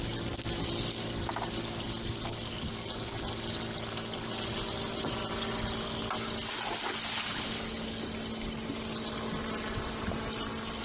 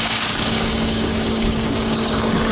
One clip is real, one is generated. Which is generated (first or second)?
second